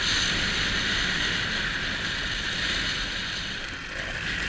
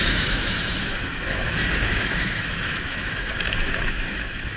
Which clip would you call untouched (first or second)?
first